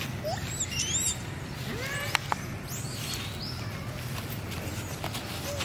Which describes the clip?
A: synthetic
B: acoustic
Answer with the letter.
B